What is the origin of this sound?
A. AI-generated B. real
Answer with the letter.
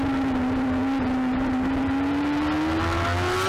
B